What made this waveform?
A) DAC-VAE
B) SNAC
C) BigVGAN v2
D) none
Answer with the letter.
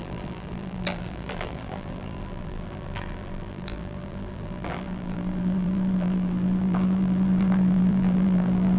C